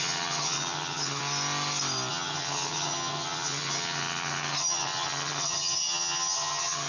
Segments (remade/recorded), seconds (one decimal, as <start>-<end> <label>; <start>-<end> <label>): 0.0-1.2 remade; 1.2-2.1 recorded; 2.1-6.9 remade